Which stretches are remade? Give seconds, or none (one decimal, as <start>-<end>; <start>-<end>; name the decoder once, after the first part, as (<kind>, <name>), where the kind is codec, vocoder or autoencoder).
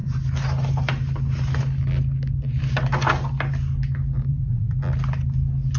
4.3-4.8 (vocoder, Vocos)